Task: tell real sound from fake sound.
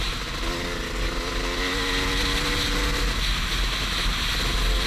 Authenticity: real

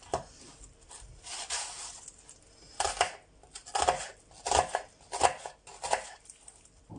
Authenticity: real